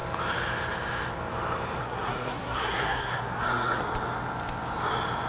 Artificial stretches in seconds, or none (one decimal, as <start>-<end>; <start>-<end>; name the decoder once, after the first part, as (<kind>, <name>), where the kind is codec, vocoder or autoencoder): 1.8-3.8 (codec, SNAC)